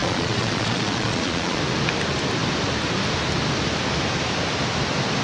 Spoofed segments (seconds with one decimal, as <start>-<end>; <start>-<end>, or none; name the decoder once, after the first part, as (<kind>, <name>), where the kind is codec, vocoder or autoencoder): 0.0-1.6 (vocoder, Vocos)